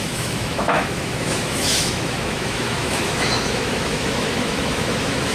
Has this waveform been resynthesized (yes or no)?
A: yes